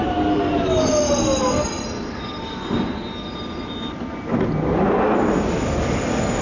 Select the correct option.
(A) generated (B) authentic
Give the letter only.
B